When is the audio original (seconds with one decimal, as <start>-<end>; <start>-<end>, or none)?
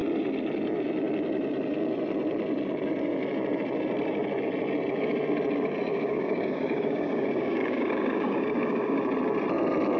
0.0-5.9; 9.0-10.0